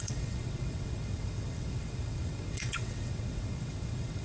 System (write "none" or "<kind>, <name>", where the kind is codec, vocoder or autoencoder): vocoder, WaveNeXt